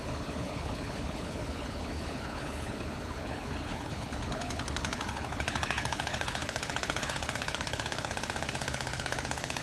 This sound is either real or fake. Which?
fake